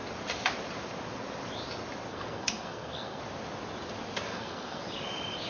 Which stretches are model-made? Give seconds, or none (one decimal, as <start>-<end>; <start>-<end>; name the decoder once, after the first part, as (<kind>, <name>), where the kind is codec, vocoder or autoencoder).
2.1-3.2 (codec, SNAC); 4.3-4.8